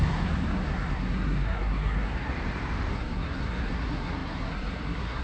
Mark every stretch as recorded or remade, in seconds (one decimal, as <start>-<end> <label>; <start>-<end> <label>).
0.0-2.3 remade; 2.3-2.9 recorded; 2.9-5.2 remade